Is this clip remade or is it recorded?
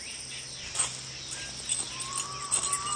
recorded